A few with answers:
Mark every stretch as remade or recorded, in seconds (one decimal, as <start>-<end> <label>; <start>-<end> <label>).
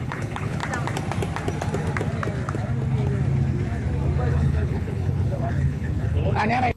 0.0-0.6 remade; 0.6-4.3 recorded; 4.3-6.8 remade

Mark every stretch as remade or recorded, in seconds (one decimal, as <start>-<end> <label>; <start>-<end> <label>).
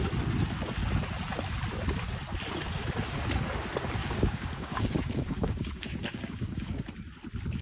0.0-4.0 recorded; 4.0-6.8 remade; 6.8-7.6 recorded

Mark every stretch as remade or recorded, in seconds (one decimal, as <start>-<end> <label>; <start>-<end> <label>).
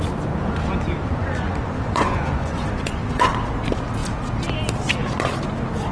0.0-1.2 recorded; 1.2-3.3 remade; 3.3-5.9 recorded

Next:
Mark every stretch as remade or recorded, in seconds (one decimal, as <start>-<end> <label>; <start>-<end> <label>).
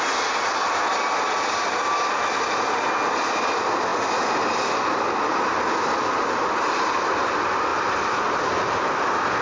0.0-9.4 recorded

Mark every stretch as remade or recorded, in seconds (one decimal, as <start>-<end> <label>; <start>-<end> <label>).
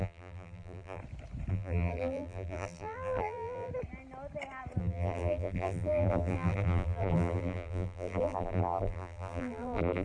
0.0-1.0 remade; 1.0-1.5 recorded; 1.5-3.7 remade; 3.7-4.8 recorded; 4.8-10.0 remade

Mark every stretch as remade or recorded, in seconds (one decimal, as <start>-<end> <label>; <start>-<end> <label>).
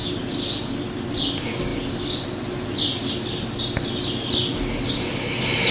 0.0-5.7 recorded